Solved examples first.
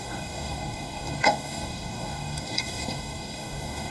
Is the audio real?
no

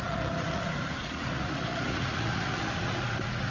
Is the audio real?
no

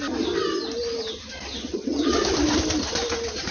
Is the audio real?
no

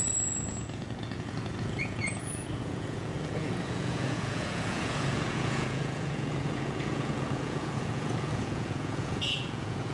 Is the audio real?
no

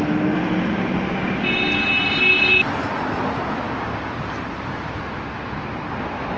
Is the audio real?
yes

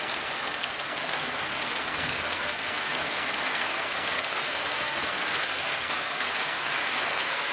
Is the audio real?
no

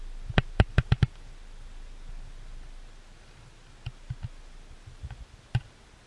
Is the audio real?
yes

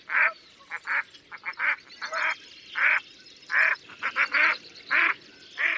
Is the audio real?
no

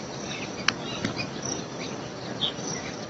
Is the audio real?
yes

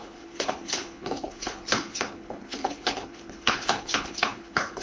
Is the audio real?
no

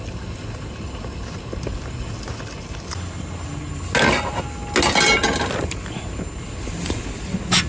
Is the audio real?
yes